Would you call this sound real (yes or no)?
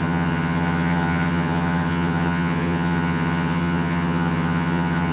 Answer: no